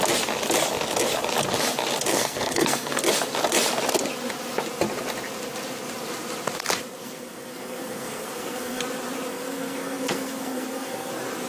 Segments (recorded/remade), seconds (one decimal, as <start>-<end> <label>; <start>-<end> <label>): 0.0-2.1 recorded; 2.1-3.0 remade; 3.0-7.0 recorded; 7.0-8.8 remade; 8.8-9.3 recorded; 9.3-11.1 remade; 11.1-11.5 recorded